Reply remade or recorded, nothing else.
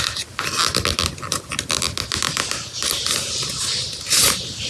recorded